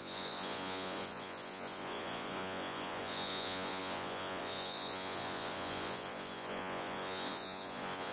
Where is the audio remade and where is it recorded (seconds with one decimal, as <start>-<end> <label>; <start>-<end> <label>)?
0.0-8.1 remade